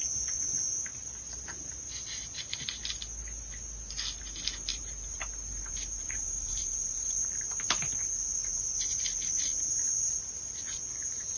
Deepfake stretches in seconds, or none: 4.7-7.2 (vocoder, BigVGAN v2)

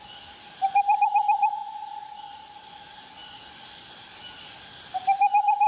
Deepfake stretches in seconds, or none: 1.6-2.7 (vocoder, BigVGAN v2); 3.2-3.8

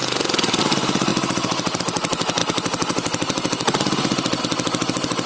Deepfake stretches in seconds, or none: 0.6-1.1 (vocoder, BigVGAN v2); 1.8-5.3

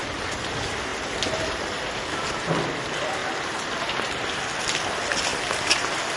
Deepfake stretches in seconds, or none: 0.9-2.1 (vocoder, BigVGAN v2); 3.2-4.4; 5.3-6.2

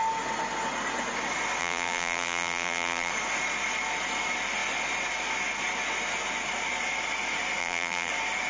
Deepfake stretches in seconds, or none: 1.6-3.1 (vocoder, BigVGAN v2); 7.6-8.1

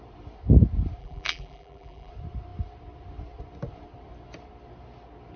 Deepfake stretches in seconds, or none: 1.0-2.1 (vocoder, BigVGAN v2)